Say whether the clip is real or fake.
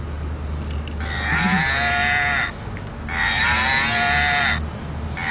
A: real